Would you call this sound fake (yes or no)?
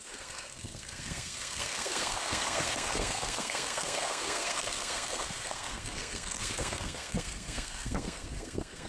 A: yes